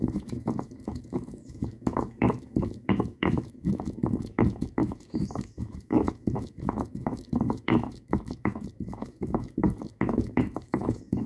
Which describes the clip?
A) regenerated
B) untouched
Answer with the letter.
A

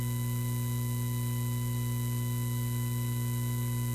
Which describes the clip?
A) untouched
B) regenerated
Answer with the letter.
A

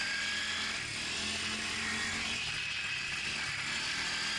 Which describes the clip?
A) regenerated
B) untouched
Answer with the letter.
B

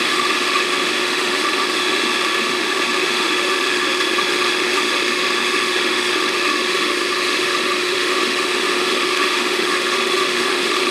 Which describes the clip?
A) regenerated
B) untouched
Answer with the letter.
A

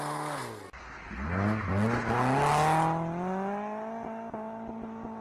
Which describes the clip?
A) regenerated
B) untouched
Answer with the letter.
B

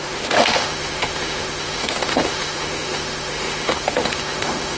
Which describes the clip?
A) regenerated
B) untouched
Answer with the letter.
A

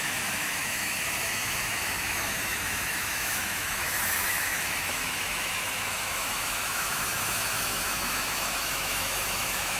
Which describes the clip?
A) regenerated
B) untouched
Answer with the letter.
A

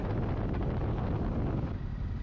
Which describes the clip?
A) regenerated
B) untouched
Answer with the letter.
B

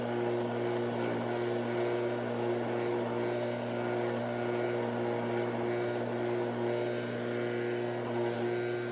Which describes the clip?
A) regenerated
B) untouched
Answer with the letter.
B